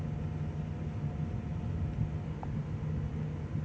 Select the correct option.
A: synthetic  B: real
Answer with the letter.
B